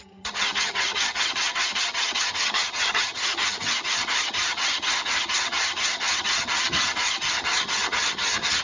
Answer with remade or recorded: remade